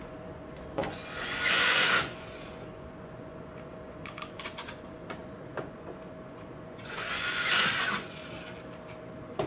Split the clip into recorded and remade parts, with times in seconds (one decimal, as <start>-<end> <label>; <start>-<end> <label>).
0.0-8.2 remade; 8.2-9.1 recorded; 9.1-9.5 remade